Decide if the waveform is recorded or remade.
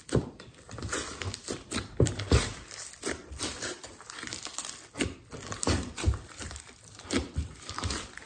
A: remade